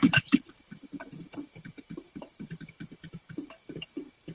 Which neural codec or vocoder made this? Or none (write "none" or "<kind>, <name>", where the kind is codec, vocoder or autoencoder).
vocoder, BigVGAN v2